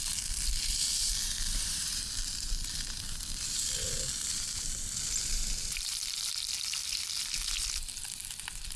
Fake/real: fake